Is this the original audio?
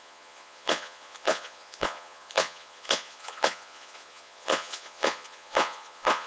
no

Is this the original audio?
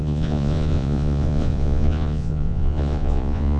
no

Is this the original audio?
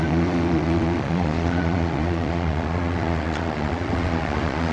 no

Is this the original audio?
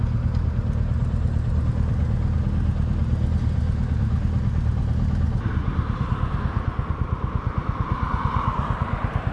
yes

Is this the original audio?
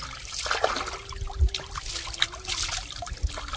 yes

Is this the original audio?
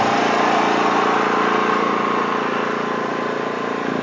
yes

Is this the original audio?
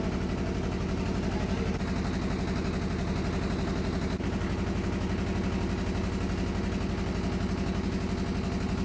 yes